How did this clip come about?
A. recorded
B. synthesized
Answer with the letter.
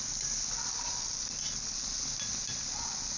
A